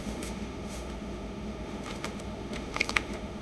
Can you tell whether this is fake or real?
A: fake